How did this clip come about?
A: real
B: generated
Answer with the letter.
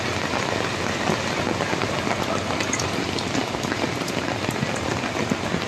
A